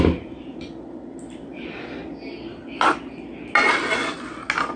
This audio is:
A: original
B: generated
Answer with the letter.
A